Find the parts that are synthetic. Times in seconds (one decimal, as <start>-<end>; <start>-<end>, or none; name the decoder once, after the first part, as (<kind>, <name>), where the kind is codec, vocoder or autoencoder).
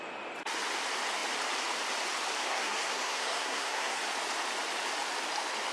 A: 2.4-4.0 (codec, SNAC)